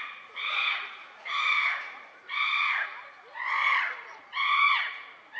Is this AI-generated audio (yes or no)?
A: yes